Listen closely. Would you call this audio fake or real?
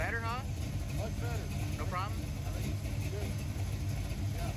real